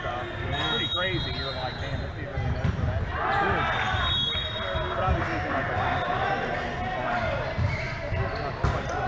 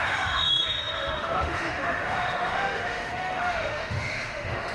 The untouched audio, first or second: first